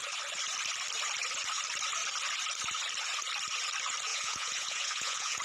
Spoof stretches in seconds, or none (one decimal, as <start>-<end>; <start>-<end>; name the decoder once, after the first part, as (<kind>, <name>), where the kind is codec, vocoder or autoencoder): 4.1-5.4 (vocoder, Vocos)